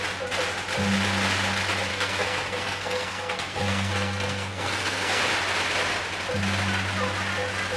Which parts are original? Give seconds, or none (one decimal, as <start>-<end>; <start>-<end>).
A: 0.0-1.9; 5.2-7.8